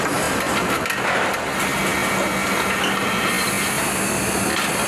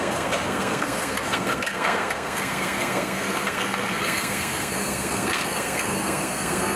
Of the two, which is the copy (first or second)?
second